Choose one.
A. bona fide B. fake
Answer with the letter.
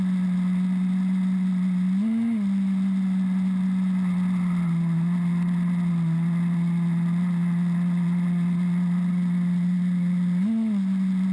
A